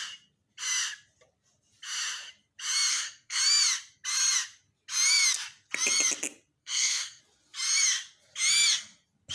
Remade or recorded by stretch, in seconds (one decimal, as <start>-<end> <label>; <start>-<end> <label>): 0.0-2.9 recorded; 2.9-3.4 remade; 3.4-6.6 recorded; 6.6-7.2 remade; 7.2-9.3 recorded